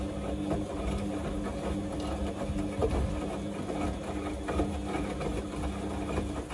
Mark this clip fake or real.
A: real